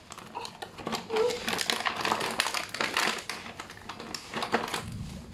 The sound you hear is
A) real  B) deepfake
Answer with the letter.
A